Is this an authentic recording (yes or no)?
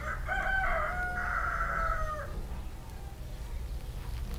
yes